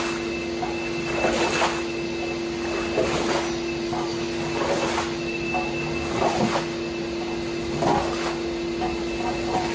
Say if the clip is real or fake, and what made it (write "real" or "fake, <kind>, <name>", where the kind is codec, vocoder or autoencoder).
real